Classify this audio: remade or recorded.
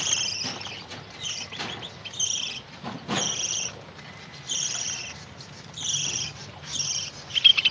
recorded